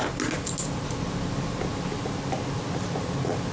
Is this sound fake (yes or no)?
no